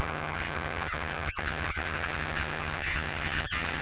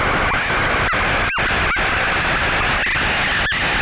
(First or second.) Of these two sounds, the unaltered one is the second